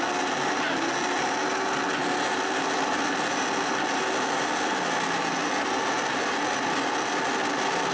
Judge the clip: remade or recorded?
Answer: recorded